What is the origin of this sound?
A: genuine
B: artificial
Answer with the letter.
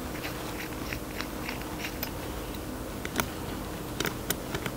A